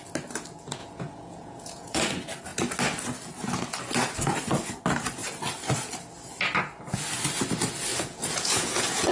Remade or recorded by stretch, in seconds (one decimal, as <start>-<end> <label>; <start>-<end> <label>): 0.0-0.8 recorded; 0.8-2.0 remade; 2.0-7.9 recorded; 7.9-9.1 remade